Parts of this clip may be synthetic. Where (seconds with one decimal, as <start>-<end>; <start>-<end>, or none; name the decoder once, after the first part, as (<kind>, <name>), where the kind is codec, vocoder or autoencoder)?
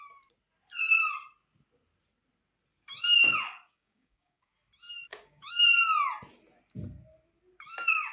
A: 3.2-4.5 (codec, DAC); 5.1-5.7